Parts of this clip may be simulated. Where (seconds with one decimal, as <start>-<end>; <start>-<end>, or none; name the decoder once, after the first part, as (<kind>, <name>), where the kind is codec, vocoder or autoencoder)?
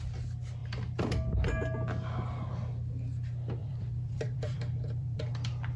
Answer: 3.6-5.3 (vocoder, BigVGAN v2)